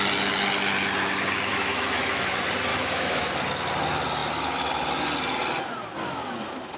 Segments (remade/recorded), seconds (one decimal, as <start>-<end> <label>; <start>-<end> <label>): 0.0-1.5 recorded; 1.5-2.3 remade; 2.3-2.7 recorded; 2.7-3.3 remade; 3.3-6.8 recorded